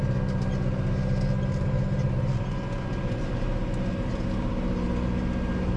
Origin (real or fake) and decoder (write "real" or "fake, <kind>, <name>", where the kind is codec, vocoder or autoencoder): real